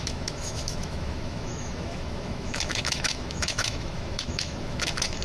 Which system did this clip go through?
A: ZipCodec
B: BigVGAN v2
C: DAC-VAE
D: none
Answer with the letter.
C